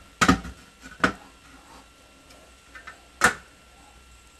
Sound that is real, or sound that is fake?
real